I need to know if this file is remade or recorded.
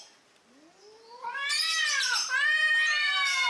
recorded